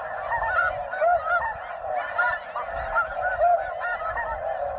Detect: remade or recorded recorded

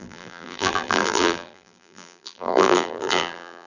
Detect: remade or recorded remade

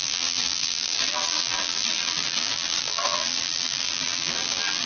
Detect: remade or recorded remade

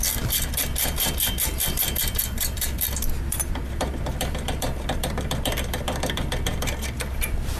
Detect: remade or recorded remade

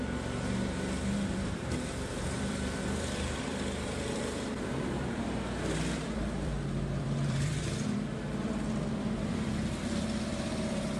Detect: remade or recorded remade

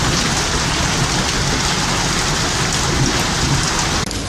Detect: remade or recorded recorded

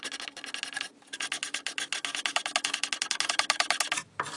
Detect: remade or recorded recorded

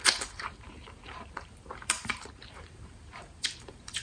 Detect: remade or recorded remade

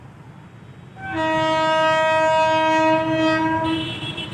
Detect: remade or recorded recorded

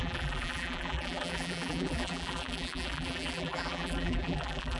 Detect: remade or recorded remade